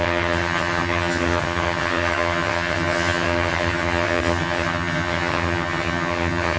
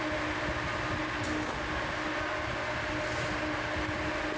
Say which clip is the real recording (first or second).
second